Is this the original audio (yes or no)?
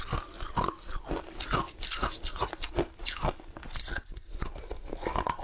yes